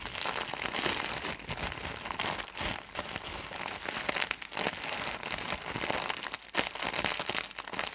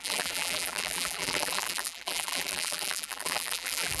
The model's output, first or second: second